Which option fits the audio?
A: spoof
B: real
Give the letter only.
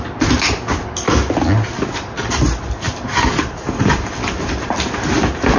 B